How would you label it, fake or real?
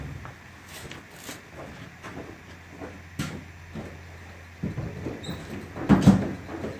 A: real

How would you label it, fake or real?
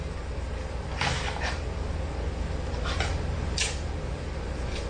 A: real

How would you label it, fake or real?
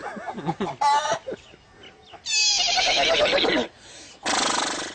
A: real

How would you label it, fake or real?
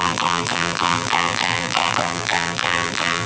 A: fake